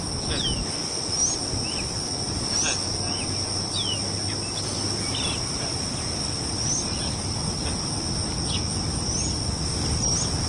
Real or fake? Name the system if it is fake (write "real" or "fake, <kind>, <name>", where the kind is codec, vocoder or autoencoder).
real